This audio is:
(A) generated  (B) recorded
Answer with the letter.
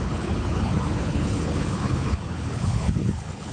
A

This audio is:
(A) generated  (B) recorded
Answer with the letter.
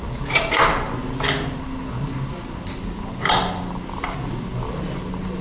B